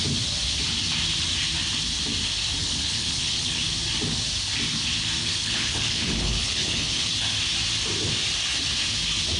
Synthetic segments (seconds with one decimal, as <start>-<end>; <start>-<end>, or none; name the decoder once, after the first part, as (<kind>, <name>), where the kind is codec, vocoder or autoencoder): 2.6-3.6 (codec, HILCodec); 5.2-7.1